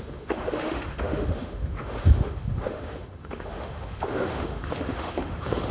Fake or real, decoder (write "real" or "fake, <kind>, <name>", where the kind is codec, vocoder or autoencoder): fake, autoencoder, DAC-VAE